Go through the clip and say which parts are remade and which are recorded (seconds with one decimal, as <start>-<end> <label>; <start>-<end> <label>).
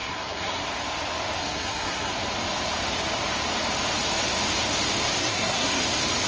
0.0-0.6 remade; 0.6-1.4 recorded; 1.4-2.1 remade; 2.1-5.2 recorded; 5.2-5.8 remade; 5.8-6.3 recorded